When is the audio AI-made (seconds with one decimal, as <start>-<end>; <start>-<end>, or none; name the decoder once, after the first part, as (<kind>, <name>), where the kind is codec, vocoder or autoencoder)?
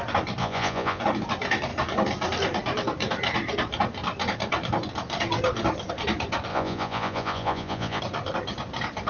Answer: 0.4-1.0 (vocoder, Vocos); 6.5-8.0